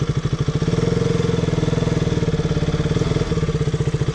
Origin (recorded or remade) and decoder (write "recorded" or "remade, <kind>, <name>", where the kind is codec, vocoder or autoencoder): recorded